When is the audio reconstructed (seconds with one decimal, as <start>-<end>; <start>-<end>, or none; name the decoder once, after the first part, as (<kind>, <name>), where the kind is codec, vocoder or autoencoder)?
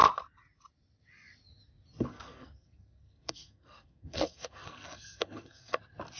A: 2.1-5.8 (codec, SNAC)